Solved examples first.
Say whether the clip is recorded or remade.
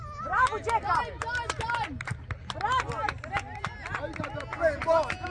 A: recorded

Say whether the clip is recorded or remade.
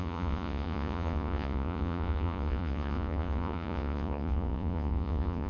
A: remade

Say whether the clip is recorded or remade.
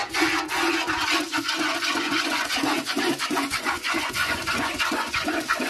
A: remade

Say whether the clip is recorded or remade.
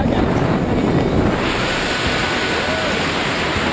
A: recorded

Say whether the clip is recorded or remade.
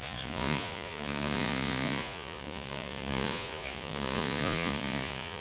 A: remade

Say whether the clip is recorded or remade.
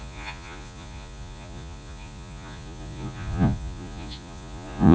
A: remade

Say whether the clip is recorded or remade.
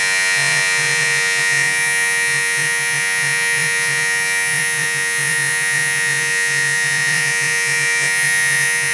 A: remade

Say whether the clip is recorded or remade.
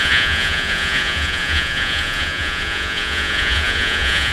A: remade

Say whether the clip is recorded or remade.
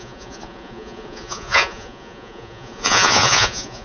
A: remade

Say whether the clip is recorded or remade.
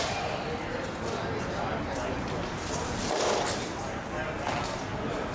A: recorded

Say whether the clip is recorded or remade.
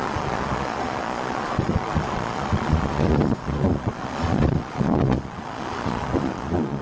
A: remade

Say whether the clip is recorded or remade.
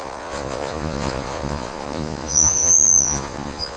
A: remade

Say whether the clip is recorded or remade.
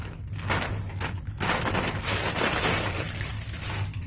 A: recorded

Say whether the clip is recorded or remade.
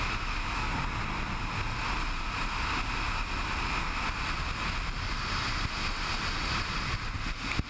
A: recorded